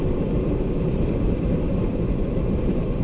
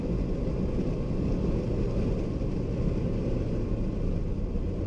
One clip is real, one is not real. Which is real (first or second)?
second